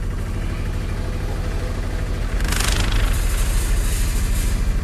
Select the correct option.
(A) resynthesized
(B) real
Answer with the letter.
B